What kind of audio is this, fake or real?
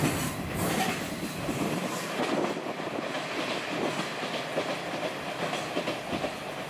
real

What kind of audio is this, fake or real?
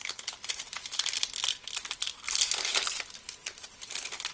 real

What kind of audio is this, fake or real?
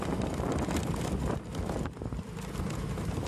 fake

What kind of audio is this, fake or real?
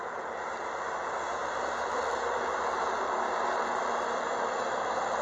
fake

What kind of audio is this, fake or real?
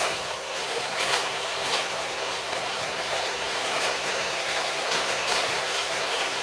fake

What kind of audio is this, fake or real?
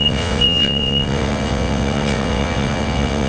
fake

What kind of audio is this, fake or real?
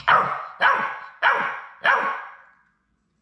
fake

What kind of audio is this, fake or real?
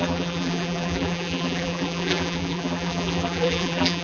fake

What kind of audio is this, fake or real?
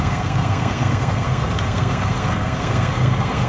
fake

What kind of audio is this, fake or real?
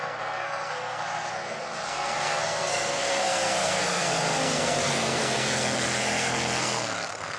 fake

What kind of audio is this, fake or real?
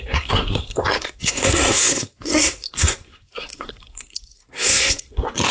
fake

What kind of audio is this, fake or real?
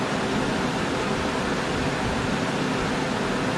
real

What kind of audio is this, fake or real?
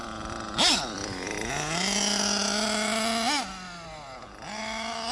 real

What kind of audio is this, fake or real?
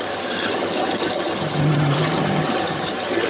fake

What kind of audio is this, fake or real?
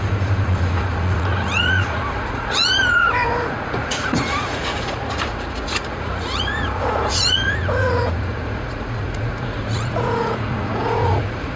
fake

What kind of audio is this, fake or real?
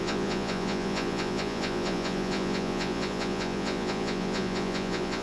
fake